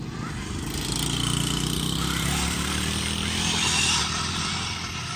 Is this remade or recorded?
recorded